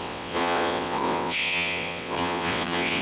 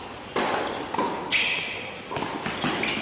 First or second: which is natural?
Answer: second